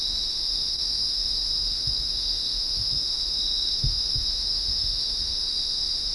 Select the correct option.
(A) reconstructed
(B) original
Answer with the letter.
A